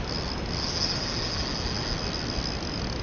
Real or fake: real